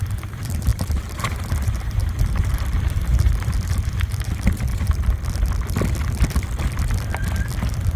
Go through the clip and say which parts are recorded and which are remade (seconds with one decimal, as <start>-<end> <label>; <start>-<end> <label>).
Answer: 0.0-4.7 remade; 4.7-7.6 recorded; 7.6-8.0 remade